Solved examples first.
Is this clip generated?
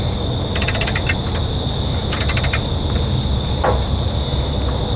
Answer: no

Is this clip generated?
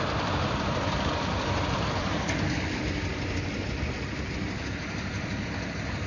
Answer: no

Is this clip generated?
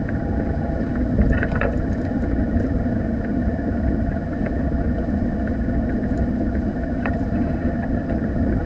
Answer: yes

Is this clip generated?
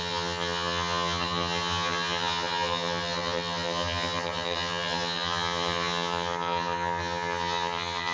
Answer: yes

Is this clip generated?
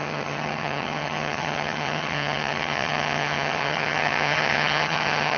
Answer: yes